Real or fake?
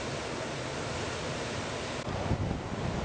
real